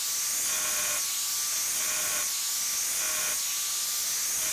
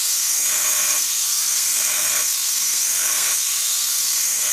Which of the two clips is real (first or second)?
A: first